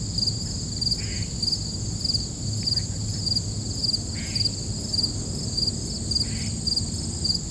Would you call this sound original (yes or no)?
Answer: yes